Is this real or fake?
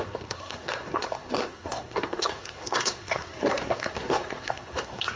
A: fake